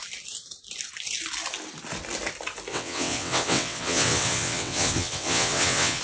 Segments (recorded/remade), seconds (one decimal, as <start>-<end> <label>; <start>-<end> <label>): 0.0-2.7 recorded; 2.7-6.0 remade